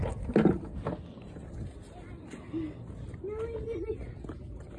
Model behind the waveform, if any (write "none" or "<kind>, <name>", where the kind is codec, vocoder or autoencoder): none